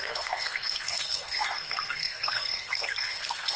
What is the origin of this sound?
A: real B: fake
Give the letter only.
B